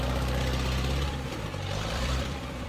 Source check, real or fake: fake